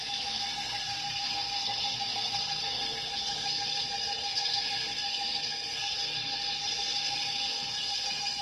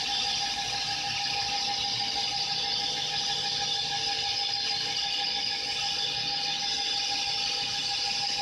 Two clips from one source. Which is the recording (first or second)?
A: second